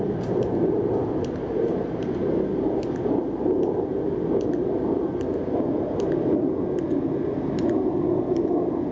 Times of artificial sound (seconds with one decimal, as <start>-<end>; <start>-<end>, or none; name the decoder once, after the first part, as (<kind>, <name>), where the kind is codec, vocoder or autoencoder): none